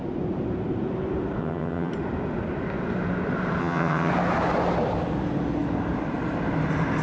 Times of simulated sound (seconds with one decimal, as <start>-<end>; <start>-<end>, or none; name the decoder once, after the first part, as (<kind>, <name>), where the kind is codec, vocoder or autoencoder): 1.4-1.9 (vocoder, HiFi-GAN); 3.6-4.1